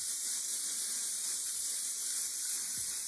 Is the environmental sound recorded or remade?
recorded